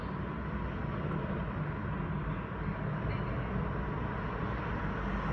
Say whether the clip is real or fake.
real